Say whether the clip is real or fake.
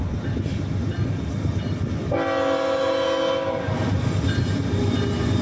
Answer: real